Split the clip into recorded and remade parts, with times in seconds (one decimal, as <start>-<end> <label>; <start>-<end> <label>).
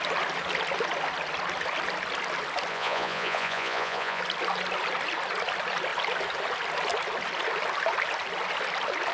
0.0-2.7 recorded; 2.7-4.2 remade; 4.2-9.1 recorded